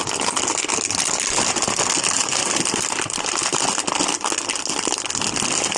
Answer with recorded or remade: recorded